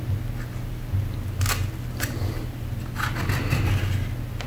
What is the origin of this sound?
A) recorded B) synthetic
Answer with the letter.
A